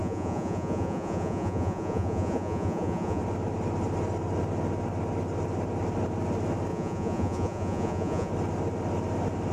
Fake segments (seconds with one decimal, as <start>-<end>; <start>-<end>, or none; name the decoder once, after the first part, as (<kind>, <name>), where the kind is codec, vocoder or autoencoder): 0.0-3.2 (vocoder, Vocos); 6.7-8.3